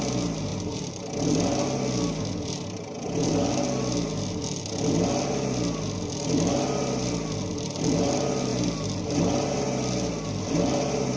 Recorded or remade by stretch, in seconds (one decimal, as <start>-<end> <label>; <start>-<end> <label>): 0.0-11.2 recorded